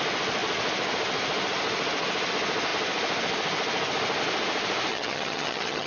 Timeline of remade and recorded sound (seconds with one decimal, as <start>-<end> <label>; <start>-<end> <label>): 0.0-4.9 recorded; 4.9-5.9 remade